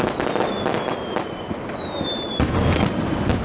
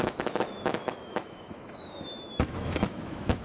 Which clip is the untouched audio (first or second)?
first